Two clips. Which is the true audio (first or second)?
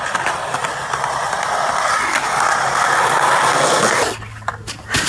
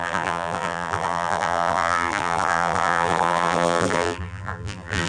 first